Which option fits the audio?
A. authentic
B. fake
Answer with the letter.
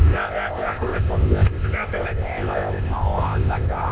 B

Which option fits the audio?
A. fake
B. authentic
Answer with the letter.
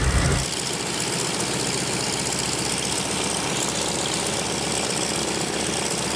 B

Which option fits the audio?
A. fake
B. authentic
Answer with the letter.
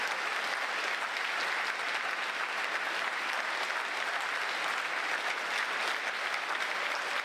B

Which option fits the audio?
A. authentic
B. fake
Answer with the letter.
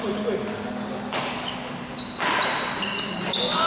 A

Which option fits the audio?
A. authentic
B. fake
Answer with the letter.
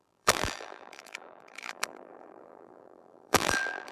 B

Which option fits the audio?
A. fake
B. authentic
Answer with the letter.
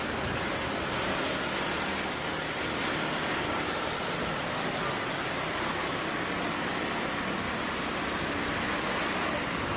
B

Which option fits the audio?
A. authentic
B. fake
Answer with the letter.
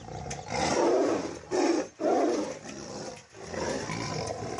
A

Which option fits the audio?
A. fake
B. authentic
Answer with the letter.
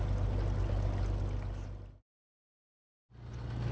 B